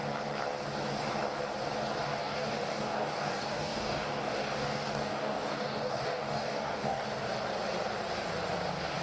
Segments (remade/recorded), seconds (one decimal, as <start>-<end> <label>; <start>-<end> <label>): 0.0-2.2 recorded; 2.2-7.0 remade; 7.0-9.0 recorded